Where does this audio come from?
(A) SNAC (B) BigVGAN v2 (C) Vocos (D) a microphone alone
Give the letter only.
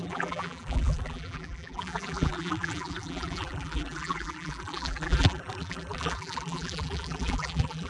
B